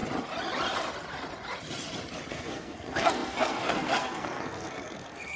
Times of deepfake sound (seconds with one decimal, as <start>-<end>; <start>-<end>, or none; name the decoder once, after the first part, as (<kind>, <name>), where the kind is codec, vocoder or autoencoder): 2.3-5.4 (codec, SNAC)